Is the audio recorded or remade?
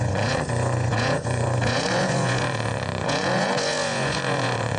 remade